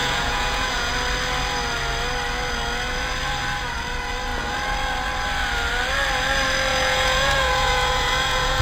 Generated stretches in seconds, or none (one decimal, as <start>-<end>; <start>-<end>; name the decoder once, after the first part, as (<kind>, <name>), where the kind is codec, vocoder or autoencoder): 0.0-0.9 (vocoder, Vocos); 6.7-8.6

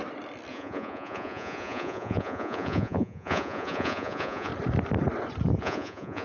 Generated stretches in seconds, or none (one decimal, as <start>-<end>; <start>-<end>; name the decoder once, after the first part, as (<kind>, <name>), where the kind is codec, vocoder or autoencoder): 0.5-4.5 (vocoder, Vocos); 5.6-6.2

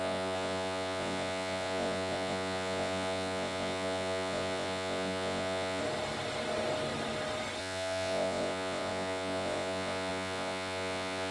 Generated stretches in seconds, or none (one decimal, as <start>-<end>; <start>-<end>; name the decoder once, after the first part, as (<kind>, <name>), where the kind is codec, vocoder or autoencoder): 0.0-5.8 (vocoder, Vocos); 7.6-11.3